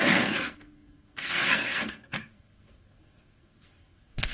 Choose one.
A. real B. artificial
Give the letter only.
B